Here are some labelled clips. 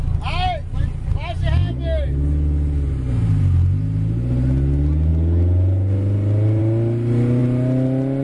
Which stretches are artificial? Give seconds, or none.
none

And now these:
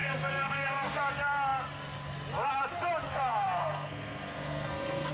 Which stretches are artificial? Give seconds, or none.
0.0-1.1 (codec, SNAC); 3.1-5.1